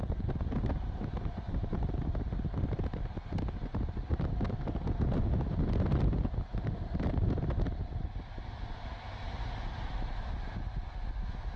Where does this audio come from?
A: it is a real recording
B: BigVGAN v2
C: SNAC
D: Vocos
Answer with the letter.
A